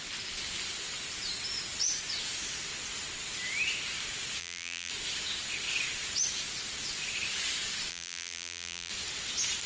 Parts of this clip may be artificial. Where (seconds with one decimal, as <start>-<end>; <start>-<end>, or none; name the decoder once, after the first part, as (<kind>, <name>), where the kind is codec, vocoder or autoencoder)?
4.4-4.9 (vocoder, BigVGAN v2); 7.9-8.9